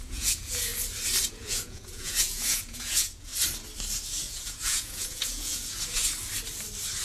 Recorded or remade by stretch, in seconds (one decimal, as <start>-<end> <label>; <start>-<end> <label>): 0.0-0.7 remade; 0.7-1.3 recorded; 1.3-3.3 remade; 3.3-4.2 recorded; 4.2-5.8 remade; 5.8-7.0 recorded